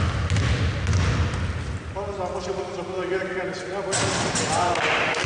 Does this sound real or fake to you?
real